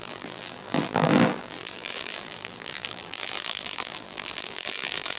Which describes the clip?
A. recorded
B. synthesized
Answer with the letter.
B